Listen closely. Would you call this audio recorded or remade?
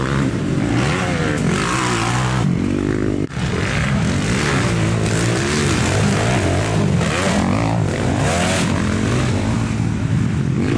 recorded